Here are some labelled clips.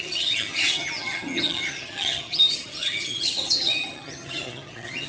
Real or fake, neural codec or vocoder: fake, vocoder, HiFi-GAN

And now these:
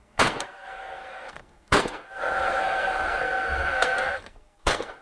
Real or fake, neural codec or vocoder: fake, codec, SNAC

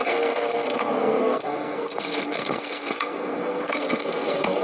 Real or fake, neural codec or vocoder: fake, codec, SNAC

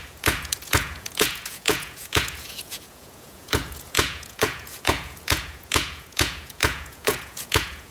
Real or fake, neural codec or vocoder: fake, vocoder, Vocos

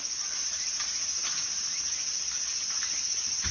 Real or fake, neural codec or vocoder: real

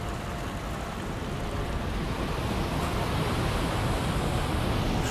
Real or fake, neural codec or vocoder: real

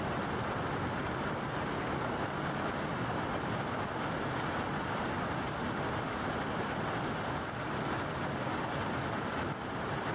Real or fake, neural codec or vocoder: real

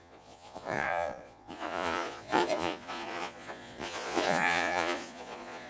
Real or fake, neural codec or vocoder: fake, vocoder, Vocos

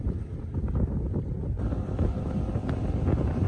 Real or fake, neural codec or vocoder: real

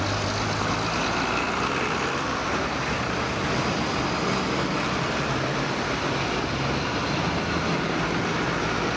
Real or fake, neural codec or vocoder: real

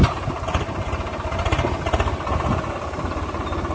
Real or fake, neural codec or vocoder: real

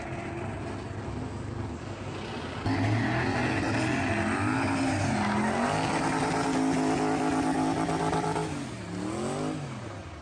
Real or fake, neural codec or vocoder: real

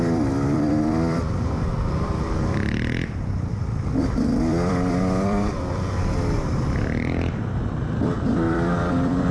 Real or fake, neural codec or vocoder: fake, vocoder, BigVGAN v2